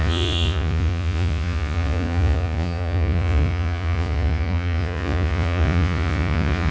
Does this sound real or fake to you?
fake